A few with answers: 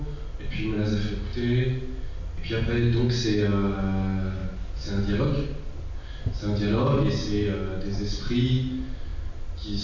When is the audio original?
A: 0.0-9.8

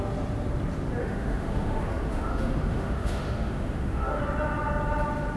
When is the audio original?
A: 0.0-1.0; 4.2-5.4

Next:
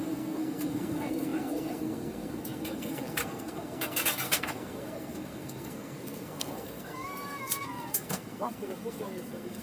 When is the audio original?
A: none